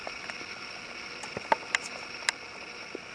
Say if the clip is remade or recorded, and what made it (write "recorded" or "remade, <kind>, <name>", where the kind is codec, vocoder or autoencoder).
recorded